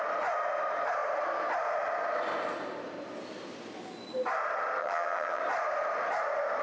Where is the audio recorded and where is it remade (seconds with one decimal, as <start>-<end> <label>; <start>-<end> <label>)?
0.0-4.8 recorded; 4.8-5.4 remade; 5.4-6.6 recorded